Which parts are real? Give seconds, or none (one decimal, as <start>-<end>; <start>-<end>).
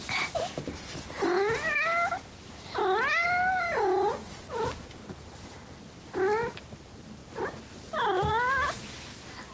0.0-9.5